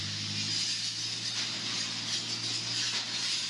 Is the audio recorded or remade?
recorded